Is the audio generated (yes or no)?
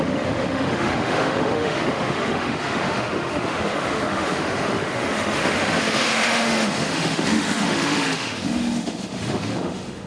yes